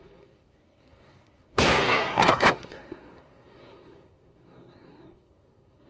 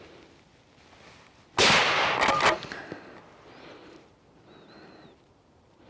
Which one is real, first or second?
second